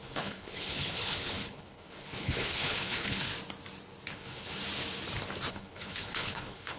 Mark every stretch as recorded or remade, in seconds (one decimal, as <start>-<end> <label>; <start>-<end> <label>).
0.0-3.3 remade; 3.3-4.1 recorded; 4.1-4.6 remade; 4.6-5.5 recorded; 5.5-6.8 remade